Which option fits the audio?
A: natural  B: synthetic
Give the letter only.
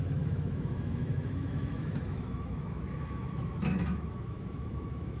B